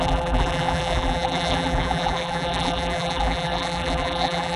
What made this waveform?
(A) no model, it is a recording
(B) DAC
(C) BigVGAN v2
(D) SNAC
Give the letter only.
C